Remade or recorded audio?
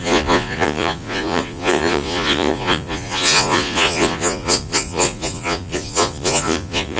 remade